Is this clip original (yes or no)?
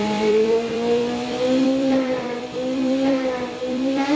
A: no